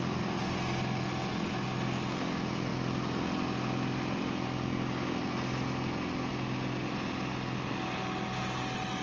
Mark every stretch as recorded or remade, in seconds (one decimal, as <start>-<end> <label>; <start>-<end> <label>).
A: 0.0-9.0 recorded